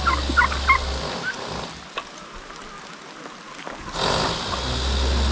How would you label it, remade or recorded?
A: recorded